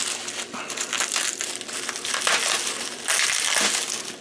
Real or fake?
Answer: real